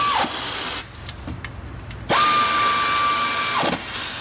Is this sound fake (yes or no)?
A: no